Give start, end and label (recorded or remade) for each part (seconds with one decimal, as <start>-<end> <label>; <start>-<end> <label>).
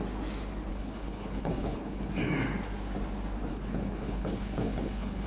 0.0-0.7 recorded; 0.7-2.1 remade; 2.1-3.5 recorded; 3.5-5.3 remade